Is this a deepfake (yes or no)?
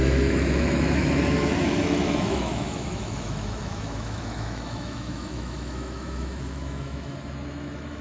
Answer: yes